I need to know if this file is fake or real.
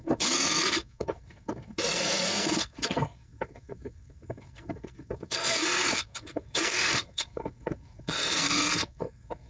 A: fake